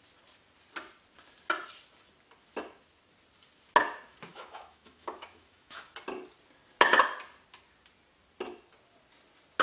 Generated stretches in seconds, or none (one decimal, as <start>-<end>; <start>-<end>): 4.3-5.8